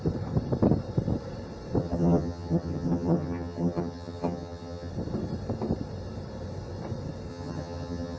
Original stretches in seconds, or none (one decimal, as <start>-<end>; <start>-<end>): 0.0-1.8; 4.9-7.3